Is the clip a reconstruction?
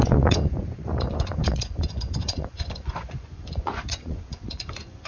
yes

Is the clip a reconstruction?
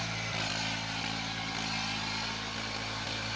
no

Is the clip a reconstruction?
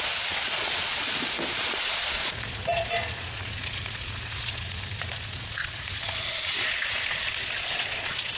yes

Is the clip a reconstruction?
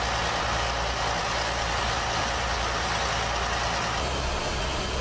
no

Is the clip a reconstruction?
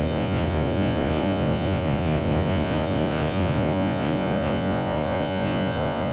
yes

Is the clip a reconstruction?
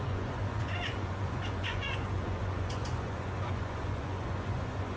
yes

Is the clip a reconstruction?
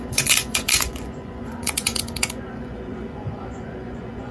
yes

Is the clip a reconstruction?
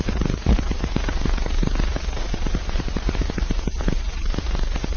yes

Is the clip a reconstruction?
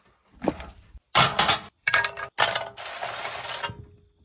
no